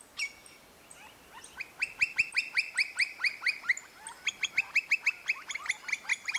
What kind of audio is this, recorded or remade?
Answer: recorded